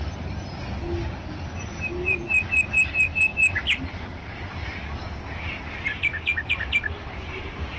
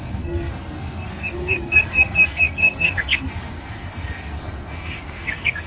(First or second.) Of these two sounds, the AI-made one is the second